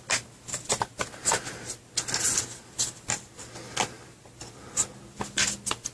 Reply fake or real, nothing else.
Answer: real